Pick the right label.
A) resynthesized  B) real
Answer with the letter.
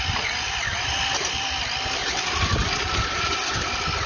B